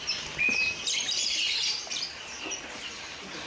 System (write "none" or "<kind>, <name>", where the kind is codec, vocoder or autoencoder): none